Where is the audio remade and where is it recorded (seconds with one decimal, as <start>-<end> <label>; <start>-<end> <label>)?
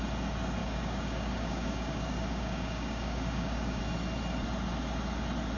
0.0-0.6 recorded; 0.6-3.8 remade; 3.8-5.6 recorded